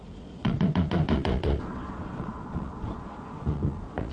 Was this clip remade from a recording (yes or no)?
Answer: yes